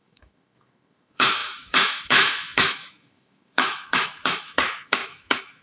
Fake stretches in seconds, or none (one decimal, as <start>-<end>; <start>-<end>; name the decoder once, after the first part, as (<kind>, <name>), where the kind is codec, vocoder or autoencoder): 0.0-5.6 (autoencoder, DAC-VAE)